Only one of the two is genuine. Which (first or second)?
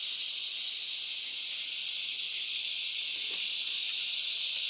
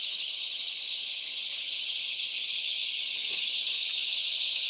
first